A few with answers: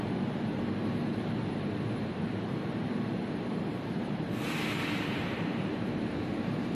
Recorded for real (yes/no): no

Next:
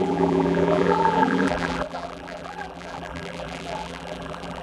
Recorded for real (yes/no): no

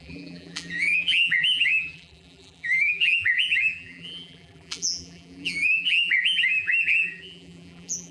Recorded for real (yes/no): no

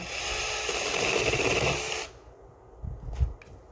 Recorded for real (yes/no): yes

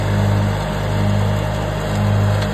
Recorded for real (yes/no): yes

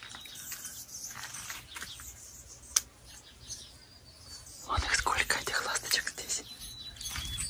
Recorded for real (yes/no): yes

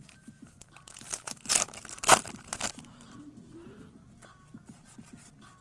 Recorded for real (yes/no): no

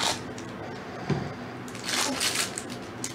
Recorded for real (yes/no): yes